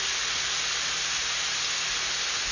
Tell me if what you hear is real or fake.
real